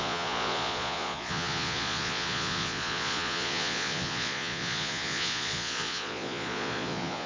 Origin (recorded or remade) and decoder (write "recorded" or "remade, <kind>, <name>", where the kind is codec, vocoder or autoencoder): remade, vocoder, Vocos